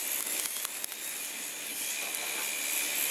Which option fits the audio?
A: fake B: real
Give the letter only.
B